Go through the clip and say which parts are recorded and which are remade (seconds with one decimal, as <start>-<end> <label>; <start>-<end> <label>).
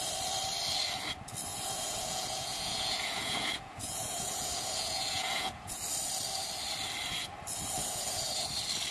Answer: 0.0-1.5 recorded; 1.5-5.8 remade; 5.8-7.8 recorded; 7.8-8.5 remade; 8.5-8.9 recorded